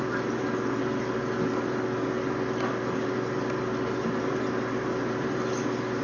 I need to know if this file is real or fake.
real